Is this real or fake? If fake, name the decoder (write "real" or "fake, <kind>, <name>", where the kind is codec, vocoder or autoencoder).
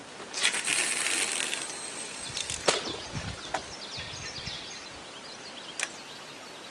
real